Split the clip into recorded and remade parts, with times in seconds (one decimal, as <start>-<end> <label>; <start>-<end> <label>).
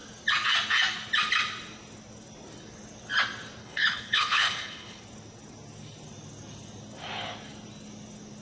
0.0-3.6 recorded; 3.6-5.0 remade; 5.0-8.4 recorded